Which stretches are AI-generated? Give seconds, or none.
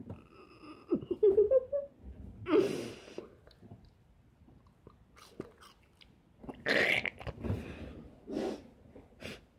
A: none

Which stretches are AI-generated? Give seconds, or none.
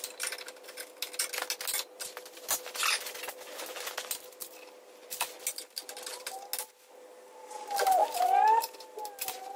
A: none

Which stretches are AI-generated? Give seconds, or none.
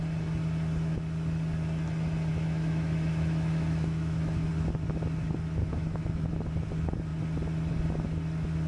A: 2.3-4.5 (autoencoder, DAC-VAE); 5.6-6.3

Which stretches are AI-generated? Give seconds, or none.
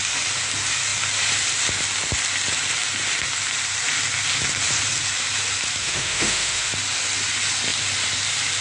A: 5.8-6.7 (autoencoder, DAC-VAE)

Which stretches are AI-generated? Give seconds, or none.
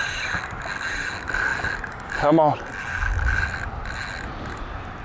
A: none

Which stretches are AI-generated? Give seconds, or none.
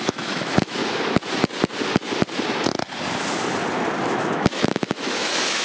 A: 0.0-0.8 (autoencoder, DAC-VAE); 4.0-5.6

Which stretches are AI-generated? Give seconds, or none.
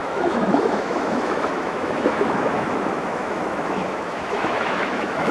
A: 0.0-5.3 (autoencoder, DAC-VAE)